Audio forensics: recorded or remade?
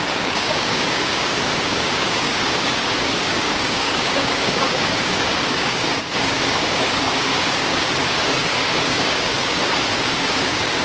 remade